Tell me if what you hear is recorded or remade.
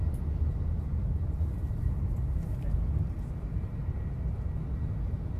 recorded